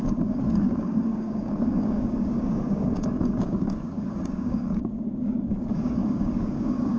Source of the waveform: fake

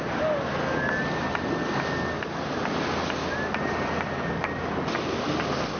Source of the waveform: real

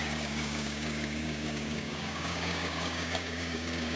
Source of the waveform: fake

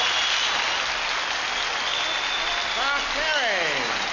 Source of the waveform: real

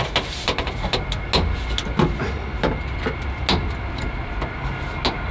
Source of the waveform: real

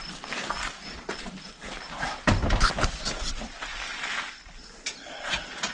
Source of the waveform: real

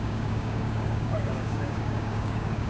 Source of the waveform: fake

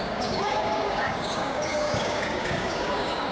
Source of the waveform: fake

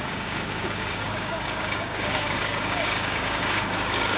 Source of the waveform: fake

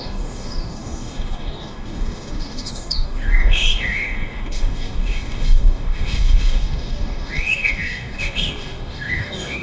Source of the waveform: fake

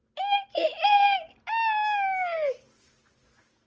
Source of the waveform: real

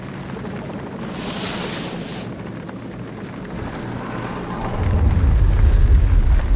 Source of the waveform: real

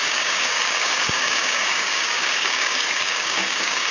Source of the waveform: fake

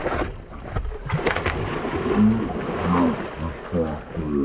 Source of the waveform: real